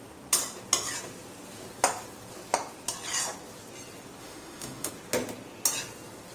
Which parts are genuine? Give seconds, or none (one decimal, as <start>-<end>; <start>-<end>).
0.0-4.2; 4.9-6.3